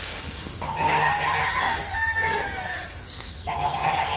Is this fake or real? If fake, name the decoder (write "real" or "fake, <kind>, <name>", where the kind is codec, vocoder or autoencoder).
fake, codec, SNAC